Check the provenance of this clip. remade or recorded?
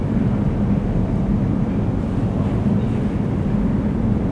recorded